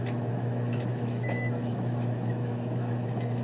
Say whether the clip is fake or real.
fake